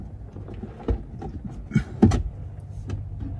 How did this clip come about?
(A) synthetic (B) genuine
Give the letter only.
B